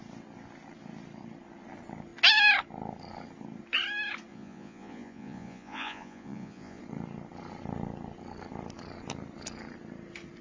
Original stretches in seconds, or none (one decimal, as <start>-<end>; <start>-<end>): 0.0-4.3; 6.8-10.4